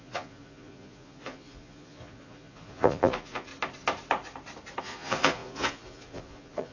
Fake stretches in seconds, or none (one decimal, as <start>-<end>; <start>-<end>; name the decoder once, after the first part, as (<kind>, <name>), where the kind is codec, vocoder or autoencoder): 0.0-3.5 (vocoder, Vocos); 4.8-6.7